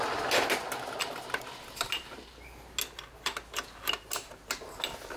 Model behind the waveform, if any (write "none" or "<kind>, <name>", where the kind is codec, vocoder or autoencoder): none